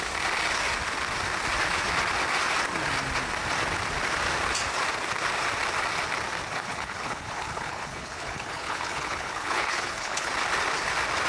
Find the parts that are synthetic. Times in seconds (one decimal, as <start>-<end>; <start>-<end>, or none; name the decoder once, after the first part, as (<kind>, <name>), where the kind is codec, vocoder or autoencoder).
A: 6.5-10.3 (codec, HILCodec)